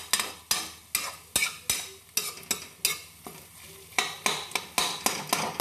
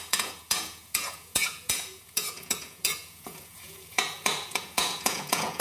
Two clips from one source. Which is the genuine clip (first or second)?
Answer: first